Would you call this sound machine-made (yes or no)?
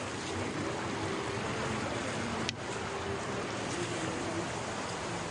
no